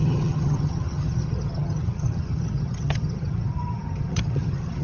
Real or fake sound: fake